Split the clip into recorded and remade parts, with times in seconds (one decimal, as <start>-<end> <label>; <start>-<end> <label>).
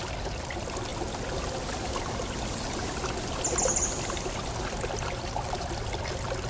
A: 0.0-6.5 recorded